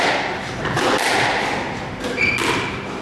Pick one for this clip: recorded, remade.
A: recorded